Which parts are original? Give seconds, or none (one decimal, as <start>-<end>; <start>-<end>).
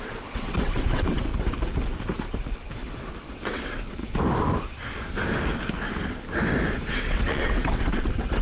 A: 1.3-3.3; 4.0-6.9